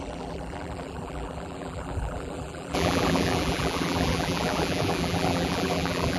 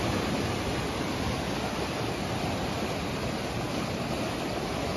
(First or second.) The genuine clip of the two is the second